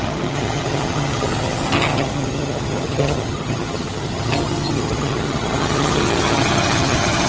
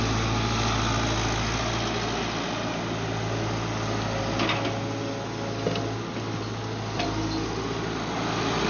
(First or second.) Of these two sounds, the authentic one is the second